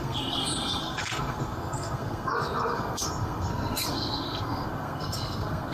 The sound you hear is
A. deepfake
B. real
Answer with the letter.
A